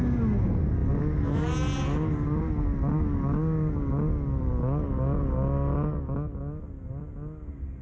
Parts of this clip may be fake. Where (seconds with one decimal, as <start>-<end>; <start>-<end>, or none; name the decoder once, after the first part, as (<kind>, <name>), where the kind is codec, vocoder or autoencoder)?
none